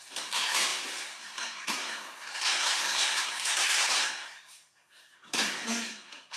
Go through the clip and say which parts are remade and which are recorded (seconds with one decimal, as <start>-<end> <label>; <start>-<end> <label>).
0.0-6.4 remade